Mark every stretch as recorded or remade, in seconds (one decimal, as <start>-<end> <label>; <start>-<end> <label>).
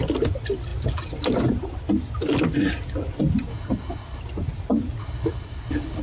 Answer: 0.0-3.5 recorded; 3.5-4.2 remade; 4.2-5.0 recorded; 5.0-6.0 remade